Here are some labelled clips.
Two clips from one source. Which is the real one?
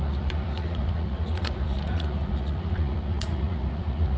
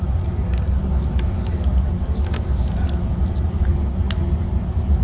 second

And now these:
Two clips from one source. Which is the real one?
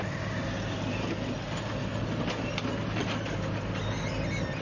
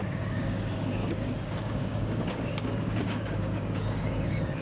first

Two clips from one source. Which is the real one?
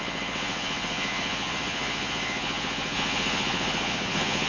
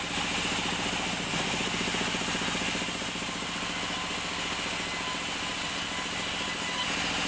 second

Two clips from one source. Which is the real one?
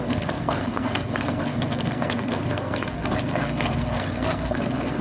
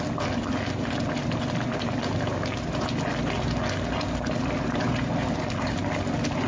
second